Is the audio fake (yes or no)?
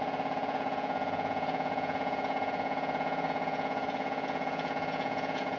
yes